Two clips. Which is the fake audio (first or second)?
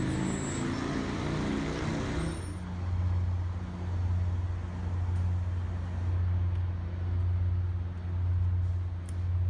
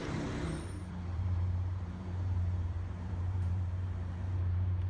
second